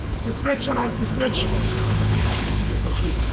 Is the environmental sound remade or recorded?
remade